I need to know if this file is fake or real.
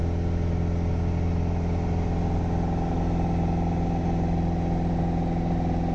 real